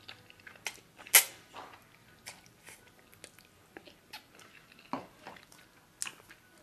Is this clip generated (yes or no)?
no